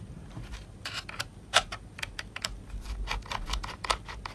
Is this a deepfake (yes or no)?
yes